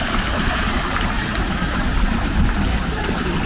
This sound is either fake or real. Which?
fake